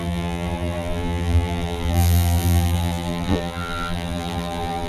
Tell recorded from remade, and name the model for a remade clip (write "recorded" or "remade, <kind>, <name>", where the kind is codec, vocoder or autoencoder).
remade, vocoder, BigVGAN v2